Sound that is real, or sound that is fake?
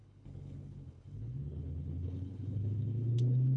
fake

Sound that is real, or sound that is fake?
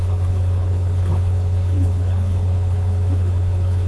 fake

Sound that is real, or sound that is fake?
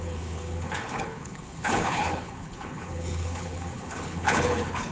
fake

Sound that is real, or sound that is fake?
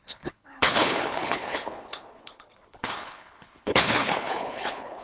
fake